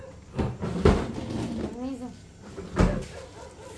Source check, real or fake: real